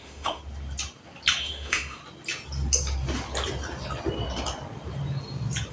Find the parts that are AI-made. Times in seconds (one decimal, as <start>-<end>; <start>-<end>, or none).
0.0-0.4; 1.4-2.0